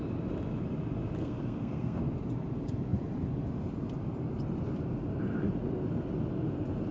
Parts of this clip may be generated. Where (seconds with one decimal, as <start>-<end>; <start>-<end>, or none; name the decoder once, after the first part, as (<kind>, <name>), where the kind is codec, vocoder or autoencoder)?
1.2-2.0 (codec, SNAC)